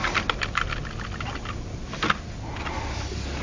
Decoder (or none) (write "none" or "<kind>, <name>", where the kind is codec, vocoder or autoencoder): none